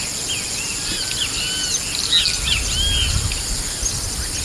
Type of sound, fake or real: real